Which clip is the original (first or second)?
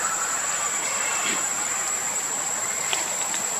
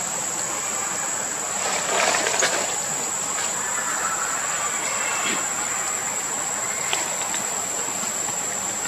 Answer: second